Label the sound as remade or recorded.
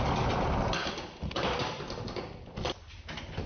recorded